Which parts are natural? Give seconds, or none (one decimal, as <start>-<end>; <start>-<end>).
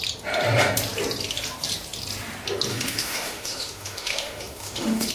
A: 0.0-2.7